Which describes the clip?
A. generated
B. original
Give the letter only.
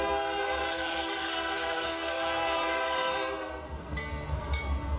A